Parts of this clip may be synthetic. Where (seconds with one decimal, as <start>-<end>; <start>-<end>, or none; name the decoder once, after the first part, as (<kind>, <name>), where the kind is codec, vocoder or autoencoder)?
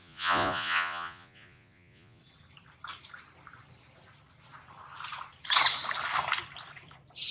0.0-2.2 (vocoder, Vocos)